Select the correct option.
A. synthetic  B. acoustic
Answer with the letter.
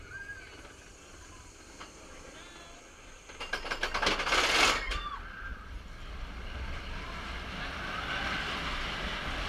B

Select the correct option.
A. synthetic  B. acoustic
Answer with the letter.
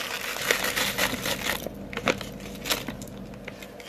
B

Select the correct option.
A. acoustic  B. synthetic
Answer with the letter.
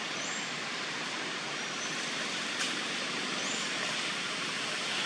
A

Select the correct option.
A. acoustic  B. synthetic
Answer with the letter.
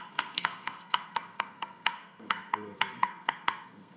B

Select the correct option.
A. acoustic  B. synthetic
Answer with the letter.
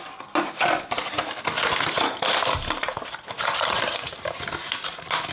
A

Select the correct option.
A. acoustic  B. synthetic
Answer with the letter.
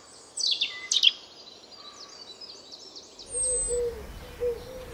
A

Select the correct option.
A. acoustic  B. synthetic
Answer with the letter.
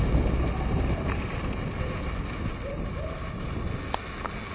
A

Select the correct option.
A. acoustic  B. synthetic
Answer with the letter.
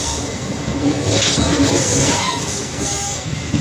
B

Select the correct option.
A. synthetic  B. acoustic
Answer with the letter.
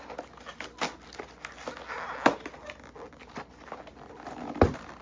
B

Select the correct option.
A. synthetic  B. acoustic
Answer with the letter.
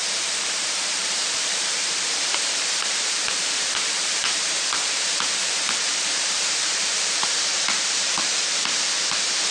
A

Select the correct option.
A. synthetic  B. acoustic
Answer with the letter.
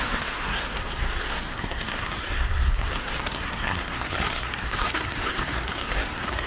A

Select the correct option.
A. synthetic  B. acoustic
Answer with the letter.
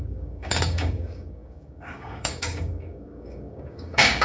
A